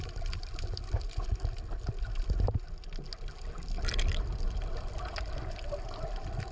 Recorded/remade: recorded